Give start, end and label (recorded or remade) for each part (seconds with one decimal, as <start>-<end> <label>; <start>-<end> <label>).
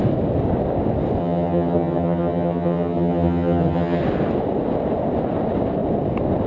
0.0-1.2 recorded; 1.2-4.0 remade; 4.0-6.5 recorded